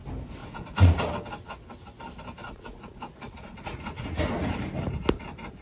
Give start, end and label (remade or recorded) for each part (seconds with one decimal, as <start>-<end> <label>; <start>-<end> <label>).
0.0-0.4 recorded; 0.4-1.1 remade; 1.1-2.4 recorded; 2.4-4.2 remade; 4.2-5.6 recorded

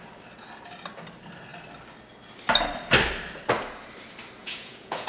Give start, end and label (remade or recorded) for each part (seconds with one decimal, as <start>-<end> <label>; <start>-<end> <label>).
0.0-4.4 recorded; 4.4-5.1 remade

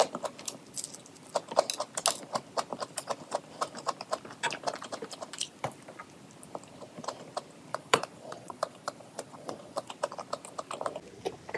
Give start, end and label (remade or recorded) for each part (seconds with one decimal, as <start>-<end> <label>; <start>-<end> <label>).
0.0-7.7 recorded; 7.7-9.9 remade; 9.9-11.6 recorded

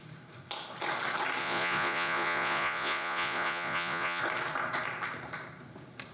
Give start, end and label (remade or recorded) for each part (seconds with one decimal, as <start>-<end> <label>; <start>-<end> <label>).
0.0-1.4 recorded; 1.4-4.2 remade; 4.2-6.1 recorded